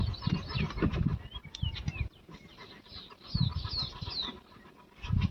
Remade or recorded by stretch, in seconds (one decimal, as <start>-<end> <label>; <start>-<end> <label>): 0.0-4.2 recorded; 4.2-4.7 remade; 4.7-5.3 recorded